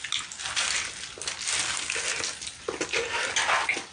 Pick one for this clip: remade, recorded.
recorded